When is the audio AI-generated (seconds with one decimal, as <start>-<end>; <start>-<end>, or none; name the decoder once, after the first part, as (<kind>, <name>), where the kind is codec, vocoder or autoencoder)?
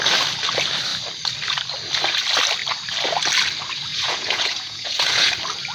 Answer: 3.9-5.3 (vocoder, Vocos)